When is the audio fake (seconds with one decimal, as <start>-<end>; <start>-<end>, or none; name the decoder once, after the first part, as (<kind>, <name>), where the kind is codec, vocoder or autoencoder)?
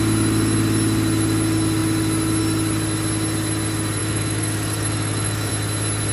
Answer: 4.0-5.5 (autoencoder, DAC-VAE)